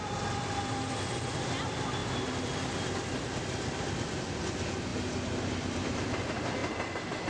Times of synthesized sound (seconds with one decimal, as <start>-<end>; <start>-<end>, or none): 2.0-4.4